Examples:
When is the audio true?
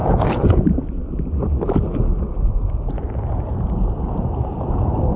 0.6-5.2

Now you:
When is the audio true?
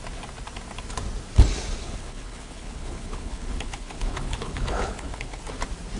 0.0-1.8; 5.4-6.0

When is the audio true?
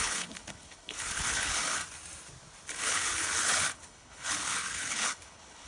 1.8-2.8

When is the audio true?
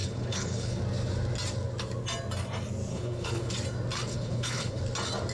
0.8-2.9; 3.5-4.1; 4.8-5.3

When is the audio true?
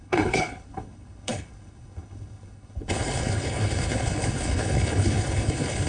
none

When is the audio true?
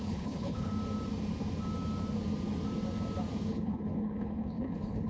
0.7-3.5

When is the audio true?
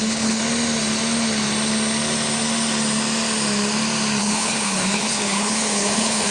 0.4-4.2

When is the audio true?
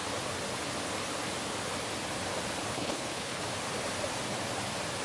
0.0-2.7; 3.4-5.0